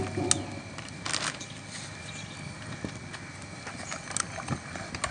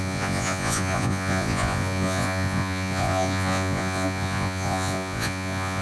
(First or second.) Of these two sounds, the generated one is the second